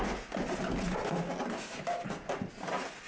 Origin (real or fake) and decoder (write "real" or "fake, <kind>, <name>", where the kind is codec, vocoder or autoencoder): real